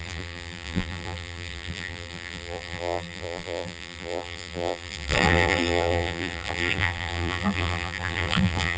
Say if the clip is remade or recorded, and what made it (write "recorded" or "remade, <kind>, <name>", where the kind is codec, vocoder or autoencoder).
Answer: remade, vocoder, BigVGAN v2